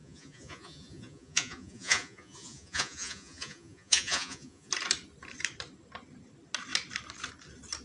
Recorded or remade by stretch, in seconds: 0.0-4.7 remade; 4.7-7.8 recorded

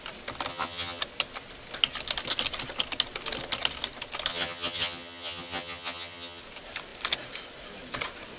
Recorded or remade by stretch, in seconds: 0.0-0.5 recorded; 0.5-1.0 remade; 1.0-4.3 recorded; 4.3-6.4 remade; 6.4-8.4 recorded

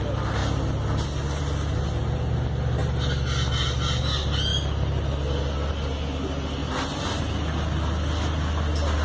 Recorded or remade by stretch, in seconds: 0.0-6.6 recorded; 6.6-7.2 remade; 7.2-9.0 recorded

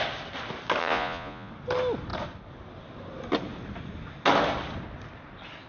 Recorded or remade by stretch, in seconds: 0.0-0.8 recorded; 0.8-1.5 remade; 1.5-5.7 recorded

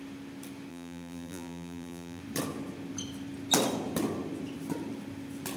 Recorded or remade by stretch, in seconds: 0.0-0.7 recorded; 0.7-2.2 remade; 2.2-5.6 recorded

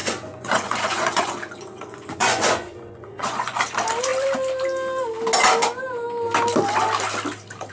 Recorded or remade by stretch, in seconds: 0.0-3.6 remade; 3.6-7.7 recorded

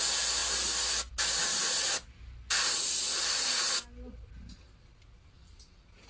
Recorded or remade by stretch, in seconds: 0.0-6.1 recorded